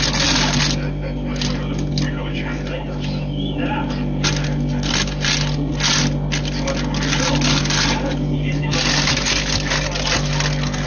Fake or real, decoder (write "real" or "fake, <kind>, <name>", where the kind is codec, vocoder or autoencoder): real